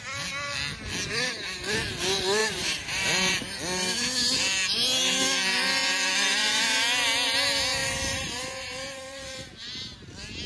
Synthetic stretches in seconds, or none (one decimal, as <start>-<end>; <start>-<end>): 2.4-3.3; 7.8-9.8